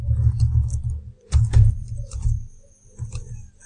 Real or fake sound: real